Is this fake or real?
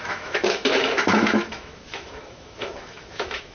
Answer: fake